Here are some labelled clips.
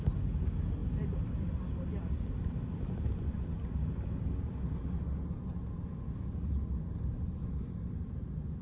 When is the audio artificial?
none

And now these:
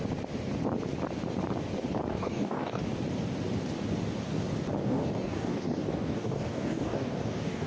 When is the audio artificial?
2.1-2.8 (codec, DAC); 4.8-7.7

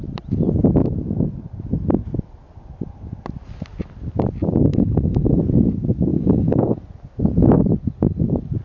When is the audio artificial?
4.7-5.4 (codec, DAC); 6.1-6.8